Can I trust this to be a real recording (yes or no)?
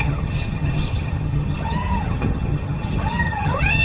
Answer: no